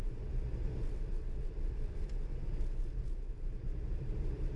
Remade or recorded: remade